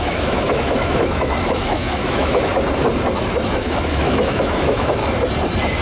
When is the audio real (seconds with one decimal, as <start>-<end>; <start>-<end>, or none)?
2.5-3.5; 5.0-5.8